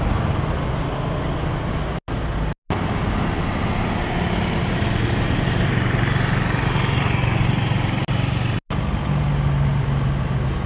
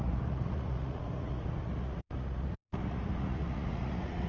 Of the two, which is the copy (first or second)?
second